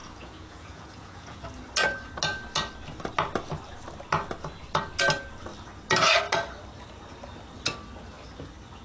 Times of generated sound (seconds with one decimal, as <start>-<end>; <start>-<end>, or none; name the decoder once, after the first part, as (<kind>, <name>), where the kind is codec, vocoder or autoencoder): 0.0-1.4 (vocoder, Vocos)